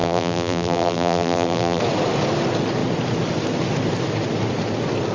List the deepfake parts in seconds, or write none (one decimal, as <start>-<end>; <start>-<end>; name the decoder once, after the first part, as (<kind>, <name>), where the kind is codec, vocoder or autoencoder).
0.0-1.8 (vocoder, BigVGAN v2)